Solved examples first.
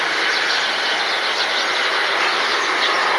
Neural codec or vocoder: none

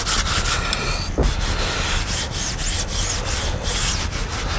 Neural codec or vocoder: none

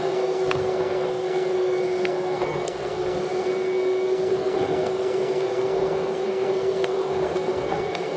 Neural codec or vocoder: codec, SNAC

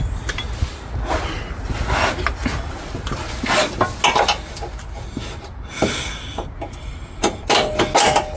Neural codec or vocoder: none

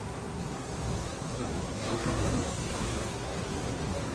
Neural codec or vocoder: codec, SNAC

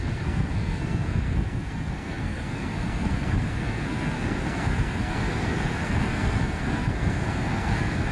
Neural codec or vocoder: codec, SNAC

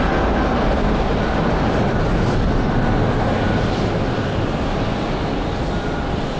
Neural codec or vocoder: none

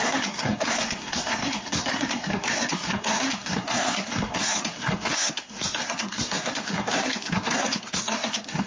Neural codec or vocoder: codec, SNAC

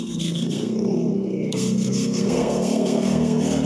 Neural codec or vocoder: codec, SNAC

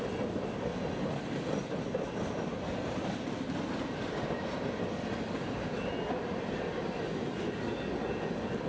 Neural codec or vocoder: none